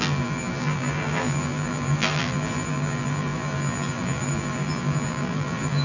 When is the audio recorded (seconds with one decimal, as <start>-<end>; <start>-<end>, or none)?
none